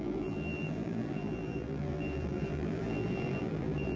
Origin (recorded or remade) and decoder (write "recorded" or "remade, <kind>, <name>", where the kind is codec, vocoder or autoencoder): remade, vocoder, BigVGAN v2